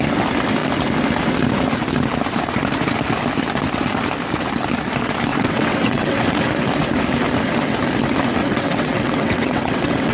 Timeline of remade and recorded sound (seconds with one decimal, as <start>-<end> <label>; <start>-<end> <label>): 0.0-5.3 recorded; 5.3-6.4 remade; 6.4-8.4 recorded; 8.4-10.1 remade